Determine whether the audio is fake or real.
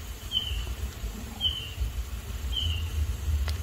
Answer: fake